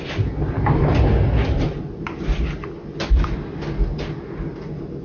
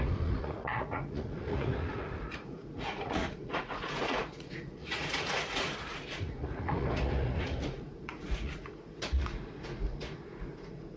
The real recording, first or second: first